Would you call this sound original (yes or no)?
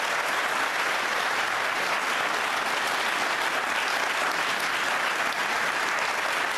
yes